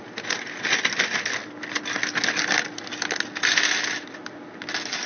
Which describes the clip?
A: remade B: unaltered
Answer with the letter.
B